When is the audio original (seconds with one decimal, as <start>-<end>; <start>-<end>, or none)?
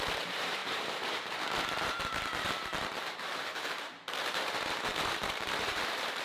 none